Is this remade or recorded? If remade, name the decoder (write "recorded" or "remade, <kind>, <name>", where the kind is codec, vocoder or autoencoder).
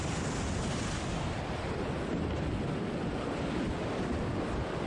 recorded